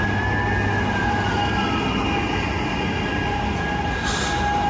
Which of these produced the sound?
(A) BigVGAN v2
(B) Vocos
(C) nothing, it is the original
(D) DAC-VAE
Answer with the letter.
C